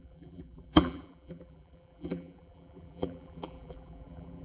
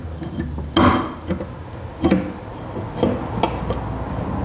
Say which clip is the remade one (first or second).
first